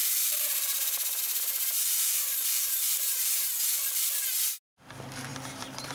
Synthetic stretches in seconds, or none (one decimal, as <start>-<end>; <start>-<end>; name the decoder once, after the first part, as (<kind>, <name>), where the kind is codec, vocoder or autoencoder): 0.0-3.5 (vocoder, BigVGAN v2); 5.3-5.9